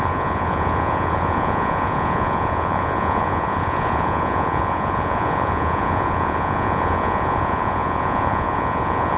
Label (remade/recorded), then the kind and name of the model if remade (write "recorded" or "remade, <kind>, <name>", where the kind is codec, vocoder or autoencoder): remade, vocoder, Vocos